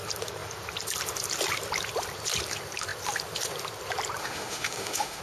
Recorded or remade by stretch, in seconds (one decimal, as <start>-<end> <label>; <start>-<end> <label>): 0.0-4.2 recorded; 4.2-5.2 remade

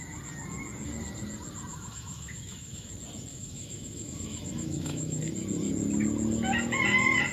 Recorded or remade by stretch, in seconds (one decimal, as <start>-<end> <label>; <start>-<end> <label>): 0.0-1.7 recorded; 1.7-2.9 remade; 2.9-3.3 recorded; 3.3-5.2 remade; 5.2-7.3 recorded

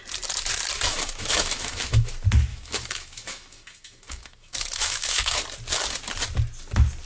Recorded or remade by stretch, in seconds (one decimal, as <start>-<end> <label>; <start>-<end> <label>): 0.0-0.9 recorded; 0.9-2.1 remade; 2.1-2.5 recorded; 2.5-5.4 remade; 5.4-7.1 recorded

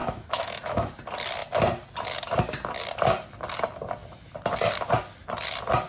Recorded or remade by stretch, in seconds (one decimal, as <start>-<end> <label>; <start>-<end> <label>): 0.0-0.9 remade; 0.9-5.9 recorded

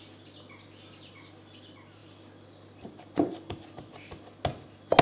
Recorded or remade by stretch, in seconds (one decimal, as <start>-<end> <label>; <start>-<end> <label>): 0.0-5.0 recorded

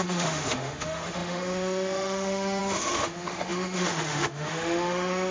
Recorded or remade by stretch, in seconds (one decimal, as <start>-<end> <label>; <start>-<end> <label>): 0.0-5.3 remade

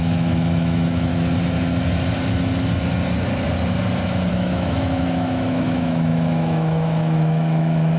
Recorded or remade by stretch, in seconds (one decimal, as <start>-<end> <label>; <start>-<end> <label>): 0.0-1.1 remade; 1.1-4.3 recorded; 4.3-8.0 remade